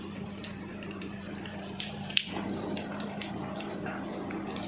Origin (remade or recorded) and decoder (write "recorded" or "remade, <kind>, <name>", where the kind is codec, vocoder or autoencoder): remade, vocoder, BigVGAN v2